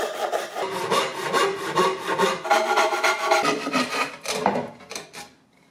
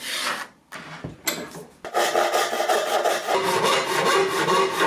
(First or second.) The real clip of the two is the second